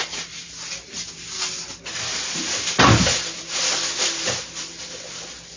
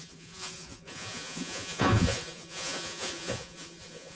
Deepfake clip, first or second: second